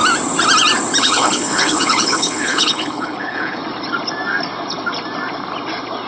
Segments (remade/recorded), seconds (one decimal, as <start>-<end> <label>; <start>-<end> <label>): 0.0-1.0 recorded; 1.0-3.6 remade; 3.6-6.1 recorded